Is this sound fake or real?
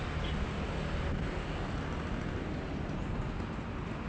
real